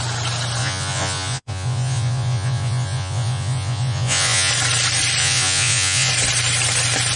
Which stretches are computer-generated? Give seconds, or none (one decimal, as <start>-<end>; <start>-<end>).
0.6-4.5; 5.2-6.1